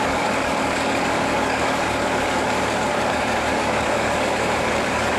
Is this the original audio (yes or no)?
no